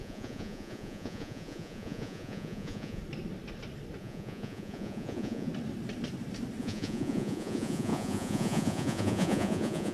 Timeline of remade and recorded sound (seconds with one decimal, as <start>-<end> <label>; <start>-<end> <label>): 0.0-3.0 remade; 3.0-4.0 recorded; 4.0-5.5 remade; 5.5-6.6 recorded; 6.6-9.9 remade